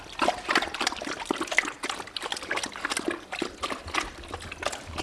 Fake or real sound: real